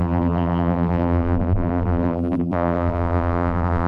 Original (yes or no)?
no